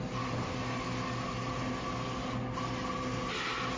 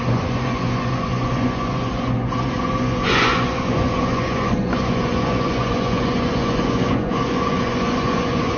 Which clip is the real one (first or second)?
first